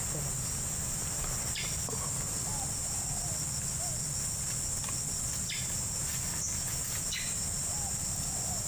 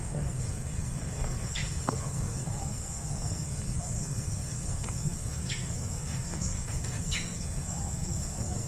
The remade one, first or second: second